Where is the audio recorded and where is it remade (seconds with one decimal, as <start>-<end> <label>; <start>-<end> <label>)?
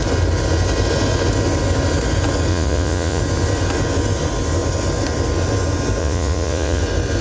0.0-2.5 recorded; 2.5-3.2 remade; 3.2-6.0 recorded; 6.0-6.8 remade; 6.8-7.2 recorded